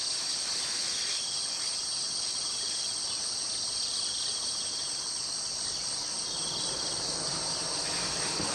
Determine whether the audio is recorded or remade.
recorded